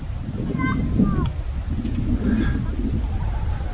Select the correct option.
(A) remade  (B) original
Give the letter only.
B